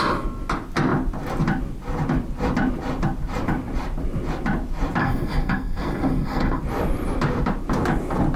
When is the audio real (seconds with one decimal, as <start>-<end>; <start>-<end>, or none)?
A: 0.0-5.0; 6.6-8.4